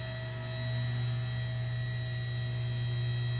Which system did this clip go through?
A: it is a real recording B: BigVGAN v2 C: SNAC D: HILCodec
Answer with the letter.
A